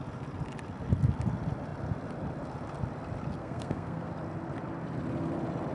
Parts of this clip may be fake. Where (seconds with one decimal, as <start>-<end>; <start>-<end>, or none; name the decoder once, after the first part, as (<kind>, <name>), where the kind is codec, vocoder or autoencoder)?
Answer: 3.4-4.1 (codec, SNAC)